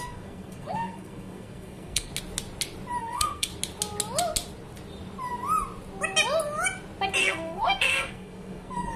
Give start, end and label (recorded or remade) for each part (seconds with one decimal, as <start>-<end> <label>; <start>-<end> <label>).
0.0-2.1 remade; 2.1-3.0 recorded; 3.0-3.5 remade; 3.5-7.2 recorded; 7.2-9.0 remade

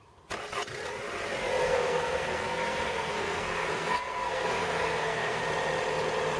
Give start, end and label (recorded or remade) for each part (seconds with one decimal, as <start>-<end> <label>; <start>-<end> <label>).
0.0-1.6 recorded; 1.6-5.4 remade; 5.4-6.4 recorded

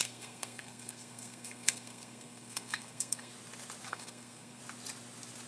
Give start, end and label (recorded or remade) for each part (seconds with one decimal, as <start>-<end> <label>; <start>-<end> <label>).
0.0-3.3 remade; 3.3-3.9 recorded; 3.9-4.6 remade; 4.6-5.5 recorded

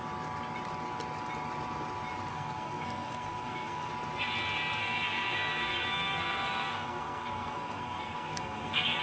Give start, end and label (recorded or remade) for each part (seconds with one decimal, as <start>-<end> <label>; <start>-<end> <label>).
0.0-2.3 recorded; 2.3-3.9 remade; 3.9-4.8 recorded; 4.8-9.0 remade

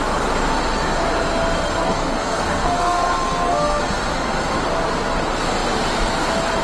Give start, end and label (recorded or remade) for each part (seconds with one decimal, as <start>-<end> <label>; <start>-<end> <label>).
0.0-1.8 recorded; 1.8-3.8 remade; 3.8-6.6 recorded

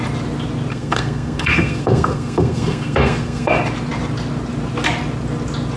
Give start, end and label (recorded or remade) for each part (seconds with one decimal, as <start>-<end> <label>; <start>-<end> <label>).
0.0-0.7 recorded; 0.7-3.5 remade; 3.5-5.8 recorded